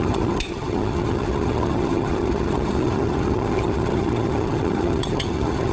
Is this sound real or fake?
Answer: fake